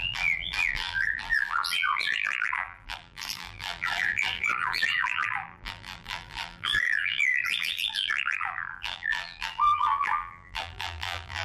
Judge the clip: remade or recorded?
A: remade